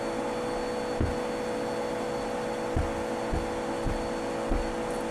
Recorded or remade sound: recorded